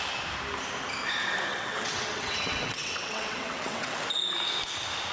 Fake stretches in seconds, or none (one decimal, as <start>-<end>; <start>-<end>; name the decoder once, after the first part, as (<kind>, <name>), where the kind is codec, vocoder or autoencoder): 1.5-4.0 (vocoder, WaveNeXt)